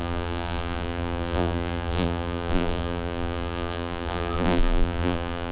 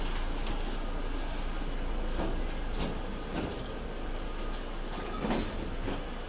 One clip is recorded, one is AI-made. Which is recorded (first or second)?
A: second